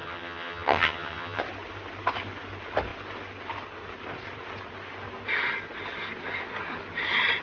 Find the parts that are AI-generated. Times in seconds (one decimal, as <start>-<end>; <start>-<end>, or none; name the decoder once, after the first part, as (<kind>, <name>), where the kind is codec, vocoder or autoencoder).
0.0-1.4 (vocoder, HiFi-GAN)